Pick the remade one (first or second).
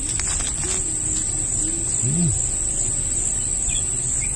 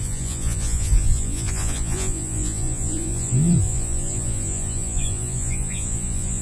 second